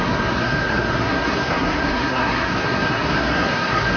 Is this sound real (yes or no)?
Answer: no